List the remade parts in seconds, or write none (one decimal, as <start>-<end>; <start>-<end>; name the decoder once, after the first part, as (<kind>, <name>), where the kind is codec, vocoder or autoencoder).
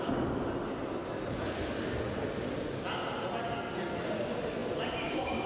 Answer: none